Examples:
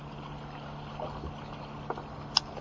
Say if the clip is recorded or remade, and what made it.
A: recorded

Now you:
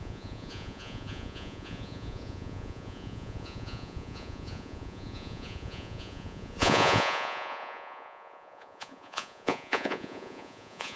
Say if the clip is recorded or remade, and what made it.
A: remade, vocoder, Vocos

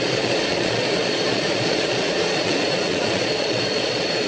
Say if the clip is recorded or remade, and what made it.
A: remade, vocoder, Vocos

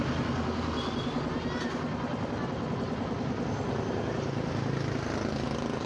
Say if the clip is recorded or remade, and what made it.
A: recorded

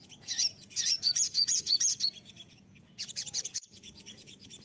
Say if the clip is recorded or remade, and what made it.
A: remade, vocoder, Vocos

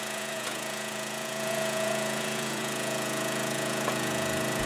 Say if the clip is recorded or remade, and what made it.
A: remade, vocoder, Vocos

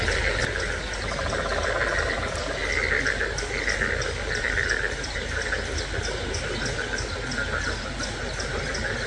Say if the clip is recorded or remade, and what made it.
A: recorded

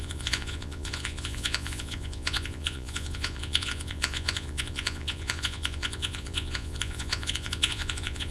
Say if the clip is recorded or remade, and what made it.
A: remade, vocoder, Vocos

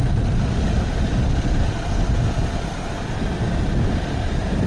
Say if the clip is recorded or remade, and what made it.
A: recorded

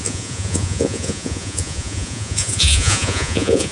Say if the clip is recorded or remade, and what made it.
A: remade, vocoder, Vocos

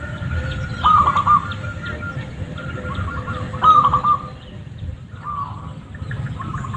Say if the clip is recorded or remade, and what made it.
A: recorded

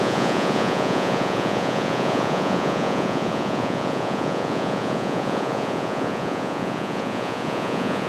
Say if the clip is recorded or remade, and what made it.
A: remade, vocoder, Vocos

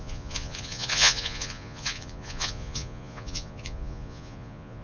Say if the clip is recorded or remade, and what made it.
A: remade, vocoder, Vocos